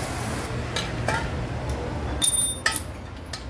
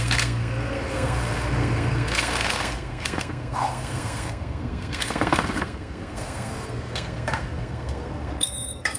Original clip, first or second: first